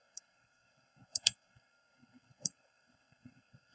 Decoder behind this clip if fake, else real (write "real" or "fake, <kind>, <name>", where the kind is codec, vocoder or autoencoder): fake, codec, SNAC